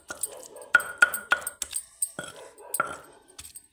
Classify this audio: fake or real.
real